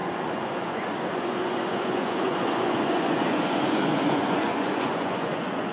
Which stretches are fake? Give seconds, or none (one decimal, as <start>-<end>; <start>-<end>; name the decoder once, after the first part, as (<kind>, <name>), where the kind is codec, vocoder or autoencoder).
0.0-5.7 (vocoder, Vocos)